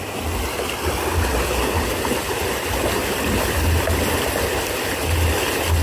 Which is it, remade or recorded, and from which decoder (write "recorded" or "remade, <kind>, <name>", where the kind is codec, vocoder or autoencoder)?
recorded